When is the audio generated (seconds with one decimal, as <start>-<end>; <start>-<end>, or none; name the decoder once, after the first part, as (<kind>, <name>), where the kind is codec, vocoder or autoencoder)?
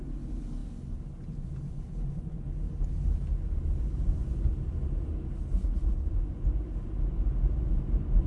none